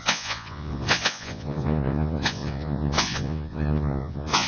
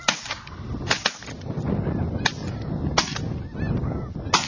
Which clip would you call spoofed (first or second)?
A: first